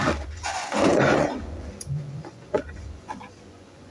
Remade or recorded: remade